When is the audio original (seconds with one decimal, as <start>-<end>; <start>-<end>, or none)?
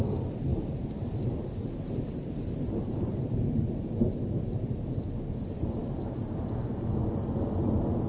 0.0-0.5; 4.0-8.1